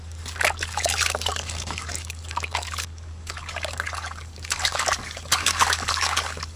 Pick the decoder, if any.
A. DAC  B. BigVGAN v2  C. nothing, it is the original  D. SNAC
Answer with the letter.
A